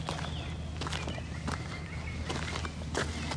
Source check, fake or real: real